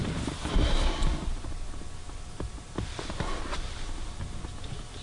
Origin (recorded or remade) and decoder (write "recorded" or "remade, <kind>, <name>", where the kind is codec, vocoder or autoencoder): recorded